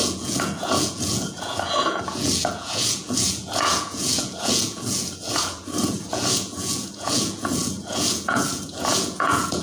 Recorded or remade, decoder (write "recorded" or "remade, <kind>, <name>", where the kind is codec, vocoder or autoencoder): remade, vocoder, Vocos